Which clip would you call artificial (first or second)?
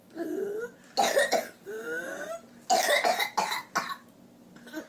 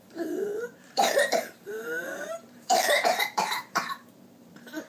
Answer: second